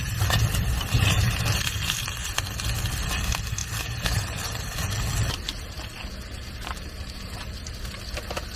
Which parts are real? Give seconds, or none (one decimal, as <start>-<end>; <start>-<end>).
2.3-3.6; 7.8-8.6